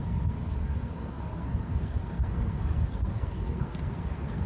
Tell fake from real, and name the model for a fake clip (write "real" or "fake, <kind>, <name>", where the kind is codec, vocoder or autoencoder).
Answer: fake, codec, SNAC